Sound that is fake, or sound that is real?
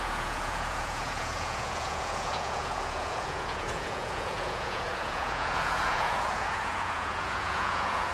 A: fake